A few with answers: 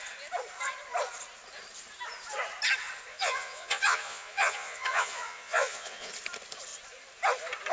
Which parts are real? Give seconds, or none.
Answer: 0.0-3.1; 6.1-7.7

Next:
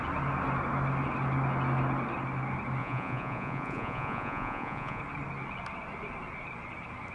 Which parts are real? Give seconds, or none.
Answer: 0.0-2.8; 5.0-7.1

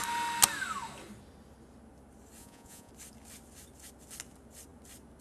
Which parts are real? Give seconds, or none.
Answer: 0.0-2.4; 2.9-5.2

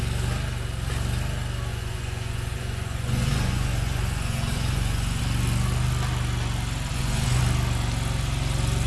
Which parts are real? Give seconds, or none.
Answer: 0.0-1.7; 5.2-6.9; 7.4-8.9

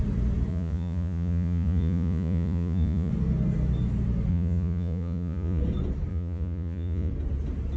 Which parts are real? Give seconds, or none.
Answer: 0.0-0.5; 3.1-4.3; 5.6-6.1; 7.1-7.8

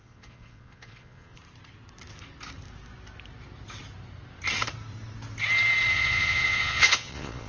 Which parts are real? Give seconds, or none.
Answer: 1.4-5.9

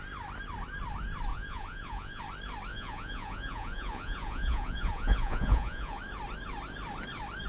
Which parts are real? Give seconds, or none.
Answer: 0.0-1.3; 2.2-2.7; 6.0-7.5